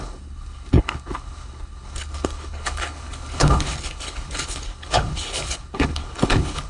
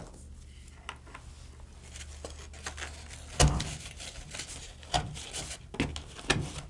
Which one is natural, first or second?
second